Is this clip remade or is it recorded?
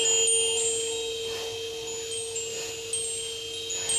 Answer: recorded